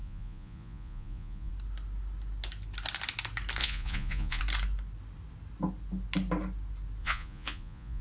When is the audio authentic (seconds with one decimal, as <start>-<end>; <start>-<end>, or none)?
1.5-3.6; 4.4-7.0